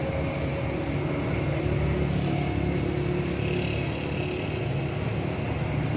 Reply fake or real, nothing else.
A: real